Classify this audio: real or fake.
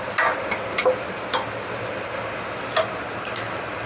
real